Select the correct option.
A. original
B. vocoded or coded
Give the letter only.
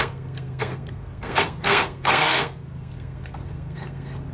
B